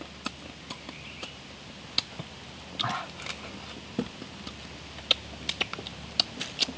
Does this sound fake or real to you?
real